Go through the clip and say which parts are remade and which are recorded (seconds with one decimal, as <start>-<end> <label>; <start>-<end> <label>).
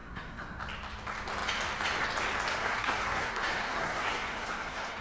0.0-0.6 remade; 0.6-2.5 recorded; 2.5-5.0 remade